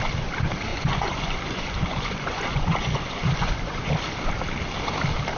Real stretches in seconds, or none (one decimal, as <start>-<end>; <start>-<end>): 0.0-0.7; 3.9-5.4